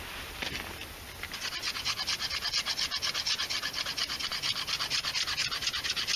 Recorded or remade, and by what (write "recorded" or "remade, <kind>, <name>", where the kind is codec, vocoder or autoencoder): recorded